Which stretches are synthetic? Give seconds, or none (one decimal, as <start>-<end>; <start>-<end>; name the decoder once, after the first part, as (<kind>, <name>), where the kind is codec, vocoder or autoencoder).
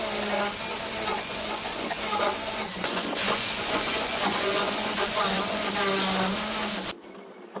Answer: 1.1-5.7 (vocoder, Vocos)